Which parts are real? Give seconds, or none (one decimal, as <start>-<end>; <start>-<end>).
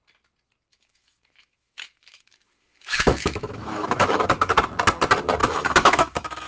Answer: 0.0-0.7; 4.2-5.4